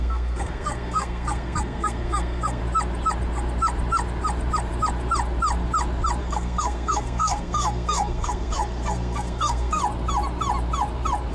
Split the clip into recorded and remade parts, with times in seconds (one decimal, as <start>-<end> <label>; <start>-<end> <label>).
0.0-2.6 remade; 2.6-6.2 recorded; 6.2-9.8 remade; 9.8-11.3 recorded